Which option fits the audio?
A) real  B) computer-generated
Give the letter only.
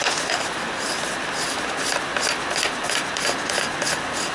A